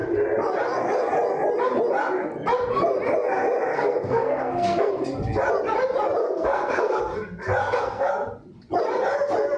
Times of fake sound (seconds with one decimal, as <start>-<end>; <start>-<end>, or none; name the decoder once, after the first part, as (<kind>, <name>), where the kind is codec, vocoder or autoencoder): 3.7-4.9 (codec, SNAC); 6.2-7.0; 7.6-8.1